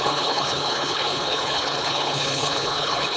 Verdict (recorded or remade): remade